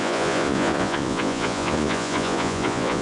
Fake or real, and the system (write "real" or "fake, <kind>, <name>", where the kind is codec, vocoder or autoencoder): fake, vocoder, Vocos